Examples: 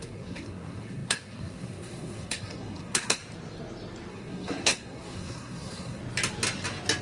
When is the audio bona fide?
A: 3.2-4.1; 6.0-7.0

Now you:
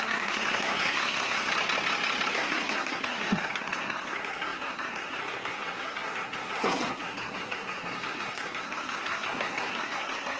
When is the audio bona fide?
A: 1.5-2.3